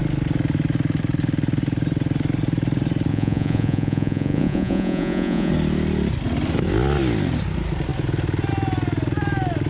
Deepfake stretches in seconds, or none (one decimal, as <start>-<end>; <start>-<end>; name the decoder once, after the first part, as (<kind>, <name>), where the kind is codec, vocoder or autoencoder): 3.1-5.5 (vocoder, Vocos)